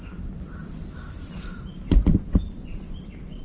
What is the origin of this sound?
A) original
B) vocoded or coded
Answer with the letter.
A